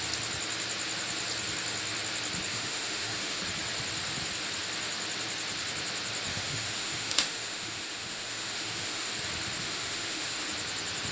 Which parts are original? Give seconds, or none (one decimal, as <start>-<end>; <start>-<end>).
0.0-2.5; 3.4-6.3; 9.1-9.6; 10.5-11.1